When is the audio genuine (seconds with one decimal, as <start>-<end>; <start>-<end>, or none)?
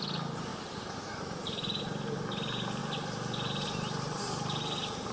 0.0-0.5; 1.8-2.8; 4.2-5.1